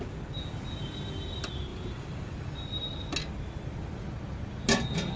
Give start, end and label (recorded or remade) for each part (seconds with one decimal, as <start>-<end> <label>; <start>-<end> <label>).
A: 0.0-5.2 recorded